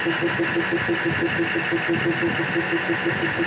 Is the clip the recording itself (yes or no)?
yes